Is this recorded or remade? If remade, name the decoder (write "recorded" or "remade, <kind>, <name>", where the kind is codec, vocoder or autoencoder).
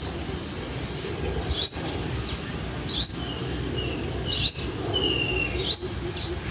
recorded